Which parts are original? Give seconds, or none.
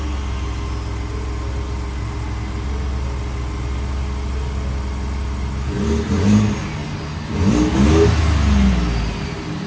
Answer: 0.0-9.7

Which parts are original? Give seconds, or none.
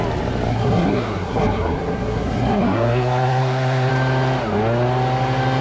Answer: 0.0-0.5; 3.9-5.6